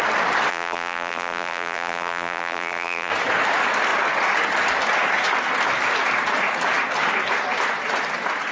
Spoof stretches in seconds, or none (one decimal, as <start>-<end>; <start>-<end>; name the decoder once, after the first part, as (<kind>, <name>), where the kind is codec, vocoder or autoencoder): 0.5-3.1 (vocoder, BigVGAN v2)